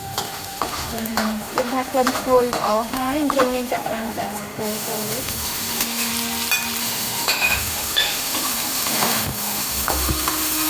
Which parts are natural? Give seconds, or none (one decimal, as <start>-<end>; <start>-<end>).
6.1-6.8